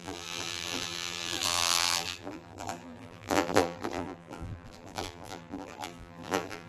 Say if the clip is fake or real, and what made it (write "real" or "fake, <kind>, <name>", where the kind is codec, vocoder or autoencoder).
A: fake, vocoder, BigVGAN v2